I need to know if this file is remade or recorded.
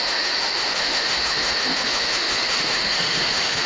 remade